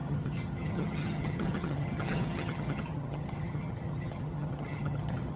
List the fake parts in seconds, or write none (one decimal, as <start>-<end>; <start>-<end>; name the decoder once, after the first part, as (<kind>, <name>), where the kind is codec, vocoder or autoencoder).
0.0-5.4 (vocoder, HiFi-GAN)